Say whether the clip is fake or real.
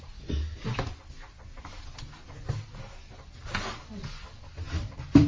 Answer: real